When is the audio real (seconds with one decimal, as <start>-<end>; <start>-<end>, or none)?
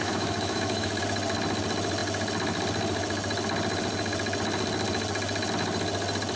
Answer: 1.0-6.4